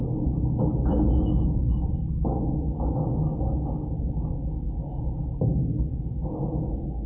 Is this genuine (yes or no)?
yes